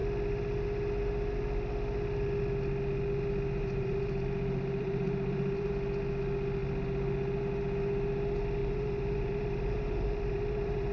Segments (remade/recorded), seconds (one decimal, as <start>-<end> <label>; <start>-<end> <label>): 0.0-3.6 recorded; 3.6-5.7 remade; 5.7-8.6 recorded; 8.6-10.9 remade